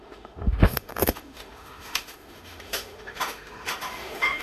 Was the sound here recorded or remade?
remade